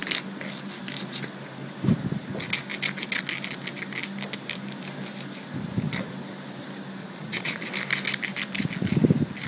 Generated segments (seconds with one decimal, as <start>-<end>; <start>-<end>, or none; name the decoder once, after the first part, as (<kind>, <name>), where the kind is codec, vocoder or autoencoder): 7.0-7.7 (vocoder, Vocos)